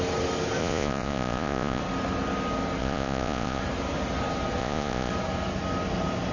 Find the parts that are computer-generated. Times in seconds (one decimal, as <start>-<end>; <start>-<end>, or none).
0.6-1.8; 2.8-3.6; 4.6-5.1